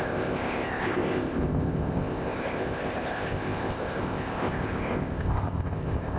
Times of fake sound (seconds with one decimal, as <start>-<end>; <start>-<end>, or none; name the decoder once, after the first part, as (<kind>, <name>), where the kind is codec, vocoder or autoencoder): 0.0-6.2 (codec, ZipCodec)